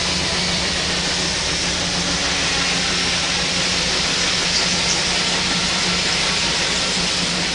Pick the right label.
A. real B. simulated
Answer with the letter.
A